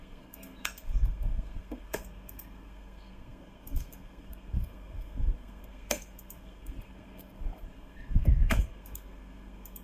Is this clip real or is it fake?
fake